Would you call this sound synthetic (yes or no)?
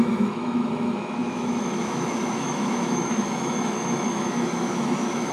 yes